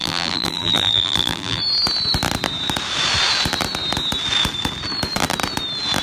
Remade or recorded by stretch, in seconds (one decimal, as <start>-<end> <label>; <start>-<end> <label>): 0.0-1.6 remade; 1.6-6.0 recorded